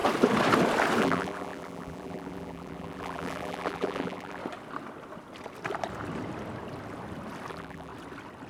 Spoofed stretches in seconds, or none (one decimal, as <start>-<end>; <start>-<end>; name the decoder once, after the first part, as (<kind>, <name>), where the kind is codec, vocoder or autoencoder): 1.0-4.4 (vocoder, BigVGAN v2); 7.5-7.9